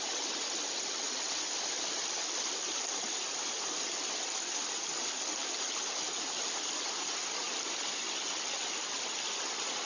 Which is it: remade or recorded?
recorded